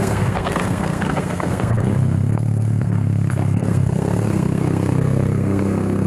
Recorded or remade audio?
remade